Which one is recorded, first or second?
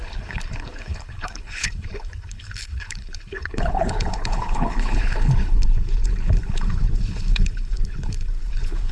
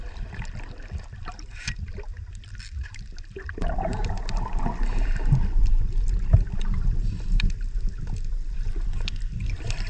second